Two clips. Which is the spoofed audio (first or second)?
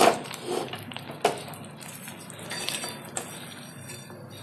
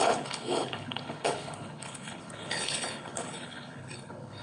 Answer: second